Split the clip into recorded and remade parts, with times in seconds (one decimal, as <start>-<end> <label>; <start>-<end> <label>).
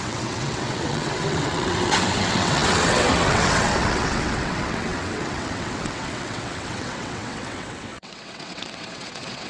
0.0-9.5 remade